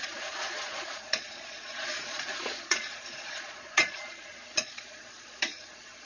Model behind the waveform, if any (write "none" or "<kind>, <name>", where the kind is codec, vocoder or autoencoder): vocoder, Vocos